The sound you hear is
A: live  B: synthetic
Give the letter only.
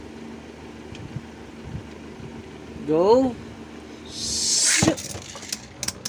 A